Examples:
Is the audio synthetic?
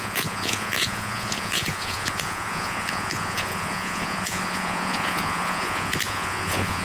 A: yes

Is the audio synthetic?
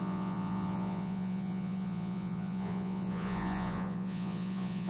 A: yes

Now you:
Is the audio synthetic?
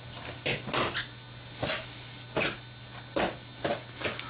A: no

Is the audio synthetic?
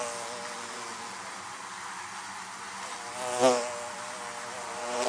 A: no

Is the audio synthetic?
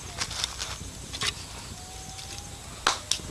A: no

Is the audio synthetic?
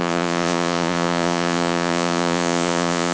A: yes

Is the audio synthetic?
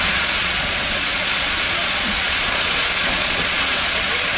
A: yes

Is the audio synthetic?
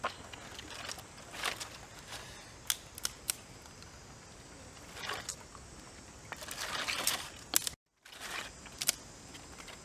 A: no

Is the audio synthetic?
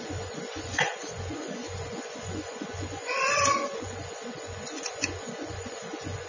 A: yes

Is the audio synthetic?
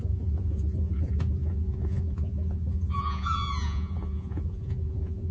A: yes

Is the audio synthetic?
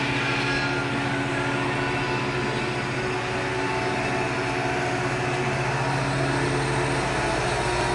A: no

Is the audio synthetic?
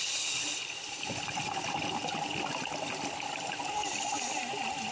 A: no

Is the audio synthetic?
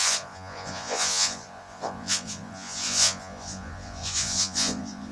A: yes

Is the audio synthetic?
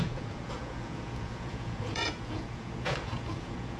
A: yes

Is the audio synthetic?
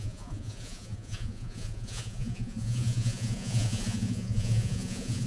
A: yes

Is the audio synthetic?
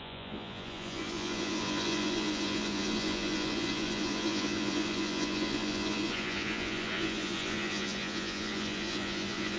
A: yes